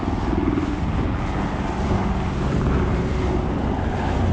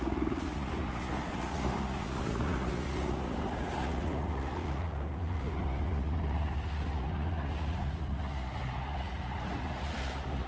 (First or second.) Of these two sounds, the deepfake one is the second